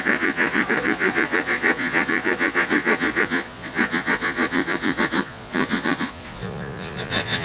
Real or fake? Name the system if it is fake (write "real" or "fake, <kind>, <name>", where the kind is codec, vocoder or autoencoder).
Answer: fake, vocoder, Vocos